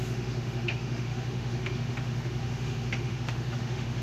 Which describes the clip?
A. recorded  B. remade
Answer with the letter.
B